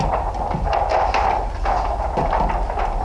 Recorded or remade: recorded